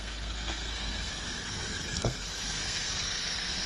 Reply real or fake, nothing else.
fake